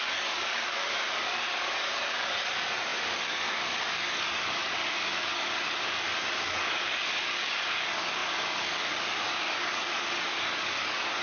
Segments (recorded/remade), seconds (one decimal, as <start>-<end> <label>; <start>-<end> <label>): 0.0-11.2 remade